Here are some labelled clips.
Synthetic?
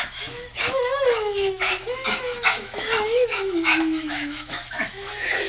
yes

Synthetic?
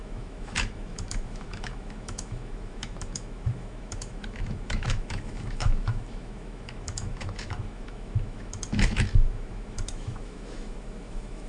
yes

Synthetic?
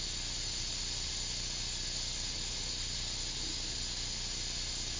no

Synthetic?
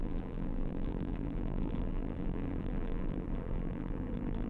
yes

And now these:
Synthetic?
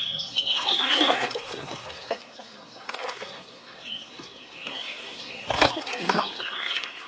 yes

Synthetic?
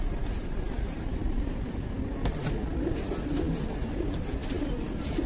no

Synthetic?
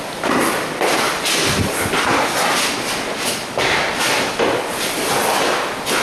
no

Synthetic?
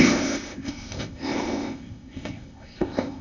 yes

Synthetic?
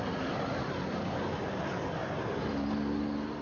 no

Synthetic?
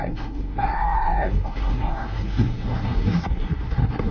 yes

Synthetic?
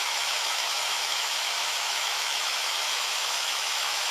yes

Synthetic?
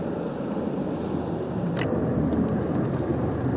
no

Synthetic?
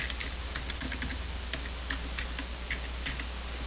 no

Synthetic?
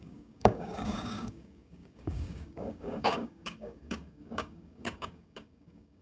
yes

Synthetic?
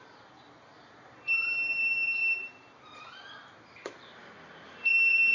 yes